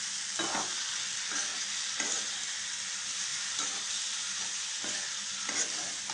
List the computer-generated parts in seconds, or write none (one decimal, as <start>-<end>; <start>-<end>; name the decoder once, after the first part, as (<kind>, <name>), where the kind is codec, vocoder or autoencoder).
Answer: 4.6-5.1 (vocoder, Vocos)